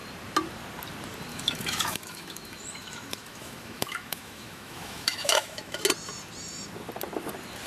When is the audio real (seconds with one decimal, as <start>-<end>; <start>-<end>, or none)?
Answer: 0.0-1.3; 5.8-7.7